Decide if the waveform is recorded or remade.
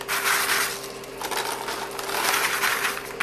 recorded